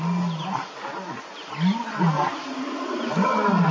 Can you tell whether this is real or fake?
real